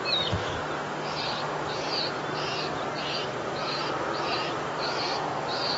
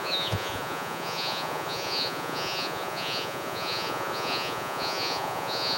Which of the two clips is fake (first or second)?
second